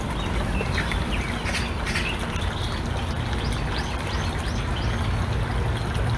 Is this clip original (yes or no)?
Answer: yes